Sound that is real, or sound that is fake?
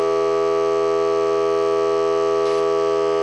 real